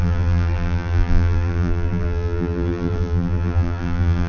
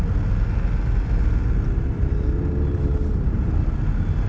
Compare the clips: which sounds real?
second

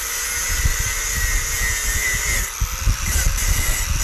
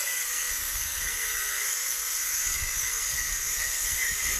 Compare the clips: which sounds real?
first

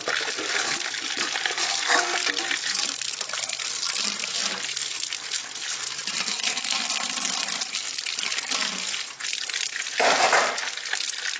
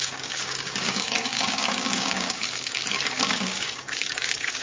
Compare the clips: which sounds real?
first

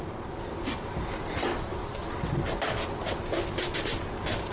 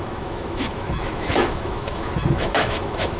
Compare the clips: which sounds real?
first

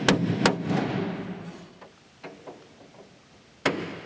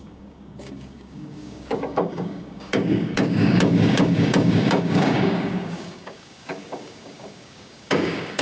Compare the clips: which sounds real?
first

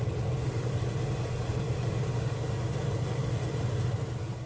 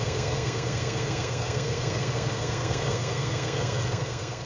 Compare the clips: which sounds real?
first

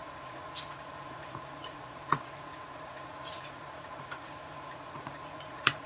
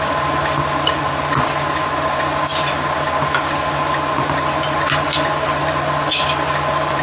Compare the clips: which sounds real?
second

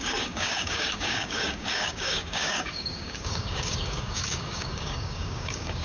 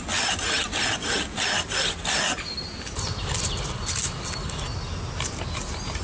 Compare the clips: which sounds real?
second